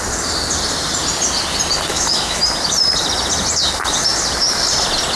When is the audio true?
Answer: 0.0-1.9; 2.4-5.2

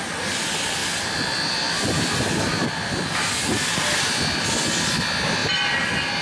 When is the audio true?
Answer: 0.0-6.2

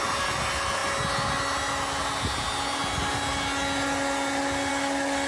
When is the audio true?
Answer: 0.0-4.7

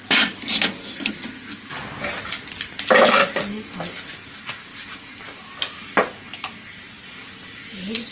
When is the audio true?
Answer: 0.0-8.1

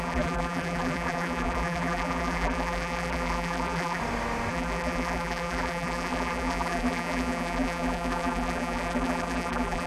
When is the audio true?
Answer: 4.0-4.5

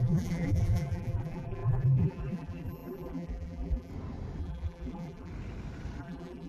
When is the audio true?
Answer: 3.9-4.4; 5.3-6.0

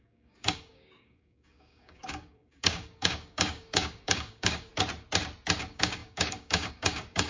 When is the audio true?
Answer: 4.7-5.6

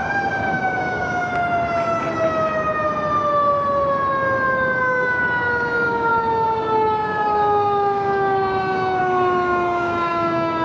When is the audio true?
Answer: 1.3-4.8